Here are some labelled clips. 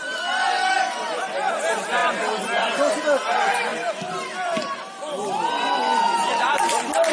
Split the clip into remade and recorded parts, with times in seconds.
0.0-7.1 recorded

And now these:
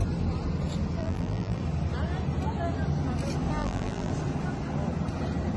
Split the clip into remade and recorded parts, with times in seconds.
0.0-1.0 recorded; 1.0-1.6 remade; 1.6-3.6 recorded; 3.6-4.1 remade; 4.1-5.6 recorded

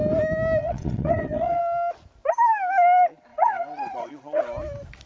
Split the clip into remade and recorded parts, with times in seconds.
0.0-0.6 recorded; 0.6-1.6 remade; 1.6-3.3 recorded; 3.3-4.4 remade; 4.4-5.1 recorded